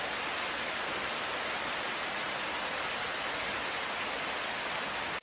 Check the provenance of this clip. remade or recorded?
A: recorded